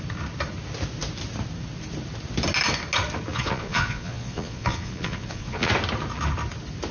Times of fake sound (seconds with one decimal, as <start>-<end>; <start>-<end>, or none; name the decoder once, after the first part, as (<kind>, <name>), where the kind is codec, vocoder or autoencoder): 3.3-5.7 (vocoder, Vocos)